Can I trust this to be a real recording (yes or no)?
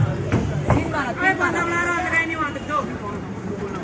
no